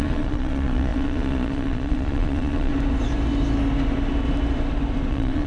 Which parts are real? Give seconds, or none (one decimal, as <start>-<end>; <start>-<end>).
2.7-5.1